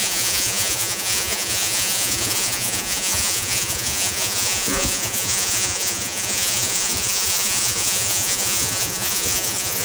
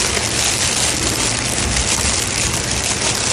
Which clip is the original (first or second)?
second